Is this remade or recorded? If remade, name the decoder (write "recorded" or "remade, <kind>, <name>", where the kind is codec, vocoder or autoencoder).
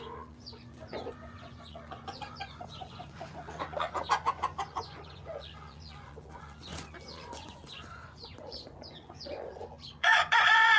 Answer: remade, vocoder, Vocos